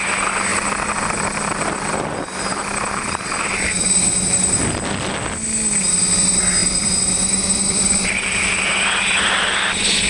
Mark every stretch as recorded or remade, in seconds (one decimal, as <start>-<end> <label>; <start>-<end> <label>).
0.0-0.5 recorded; 0.5-4.8 remade; 4.8-6.6 recorded; 6.6-8.7 remade; 8.7-10.1 recorded